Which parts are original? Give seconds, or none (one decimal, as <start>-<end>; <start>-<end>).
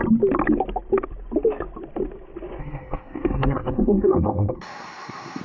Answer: 0.0-2.6